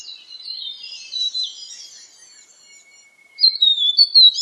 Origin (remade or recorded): remade